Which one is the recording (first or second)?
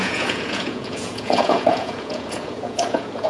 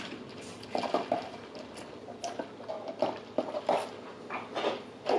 second